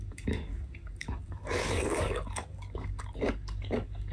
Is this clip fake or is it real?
fake